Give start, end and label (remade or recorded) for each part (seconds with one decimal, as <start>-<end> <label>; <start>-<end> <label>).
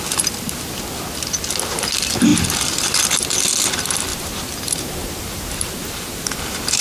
0.0-4.1 recorded; 4.1-6.8 remade